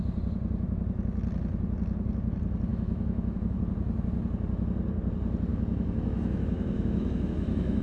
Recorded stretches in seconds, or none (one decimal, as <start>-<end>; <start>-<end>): 0.0-2.7; 3.6-5.5